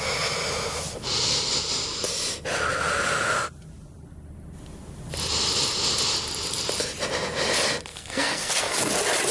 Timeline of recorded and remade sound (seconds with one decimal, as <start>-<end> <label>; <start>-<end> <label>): 0.0-7.9 recorded; 7.9-8.9 remade; 8.9-9.3 recorded